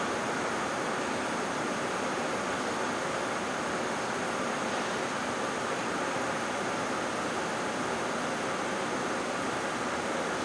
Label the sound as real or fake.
real